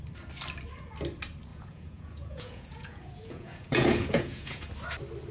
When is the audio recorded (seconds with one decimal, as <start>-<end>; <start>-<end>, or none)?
0.0-1.5; 4.7-5.3

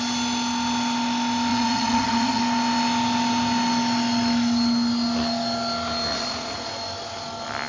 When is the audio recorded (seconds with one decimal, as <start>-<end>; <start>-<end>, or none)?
0.0-1.5; 2.4-6.1; 6.7-7.7